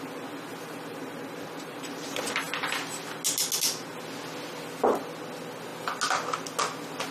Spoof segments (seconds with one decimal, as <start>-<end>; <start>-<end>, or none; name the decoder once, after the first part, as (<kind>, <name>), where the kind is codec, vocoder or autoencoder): 0.5-2.3 (vocoder, BigVGAN v2)